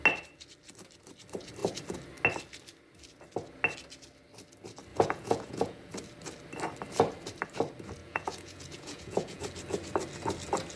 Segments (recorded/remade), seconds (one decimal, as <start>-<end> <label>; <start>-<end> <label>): 0.0-4.9 recorded; 4.9-5.9 remade; 5.9-8.0 recorded; 8.0-9.4 remade; 9.4-10.8 recorded